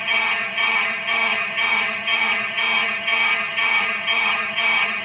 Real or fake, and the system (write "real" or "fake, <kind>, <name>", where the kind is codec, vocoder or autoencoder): fake, vocoder, HiFi-GAN